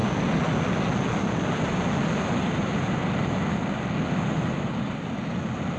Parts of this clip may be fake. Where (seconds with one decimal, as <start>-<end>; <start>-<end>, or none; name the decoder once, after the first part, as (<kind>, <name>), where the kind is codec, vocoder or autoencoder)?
none